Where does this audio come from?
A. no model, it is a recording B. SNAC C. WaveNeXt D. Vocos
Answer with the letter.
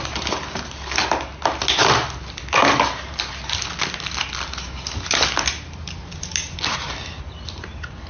A